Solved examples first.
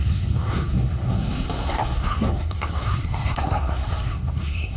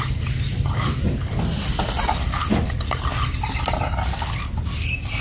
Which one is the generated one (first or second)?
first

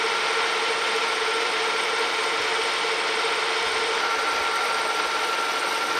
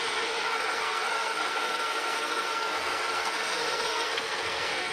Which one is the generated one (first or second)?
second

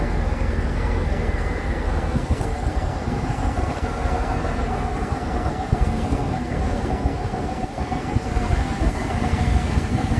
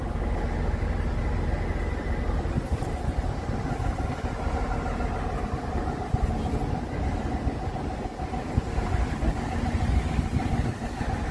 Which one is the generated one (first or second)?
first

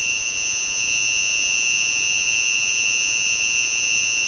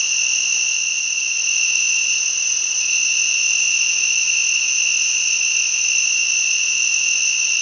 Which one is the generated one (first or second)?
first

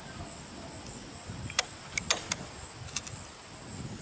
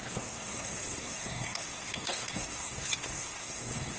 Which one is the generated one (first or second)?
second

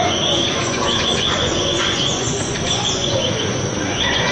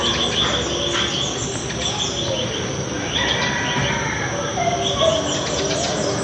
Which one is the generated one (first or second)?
first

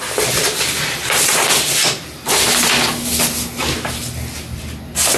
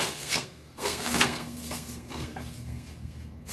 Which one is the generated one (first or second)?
second